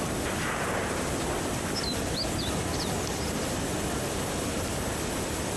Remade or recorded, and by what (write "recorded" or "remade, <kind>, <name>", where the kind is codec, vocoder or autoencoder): recorded